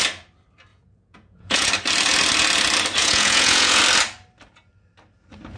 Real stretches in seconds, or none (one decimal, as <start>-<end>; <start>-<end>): 0.0-0.7; 1.7-3.0; 3.8-5.6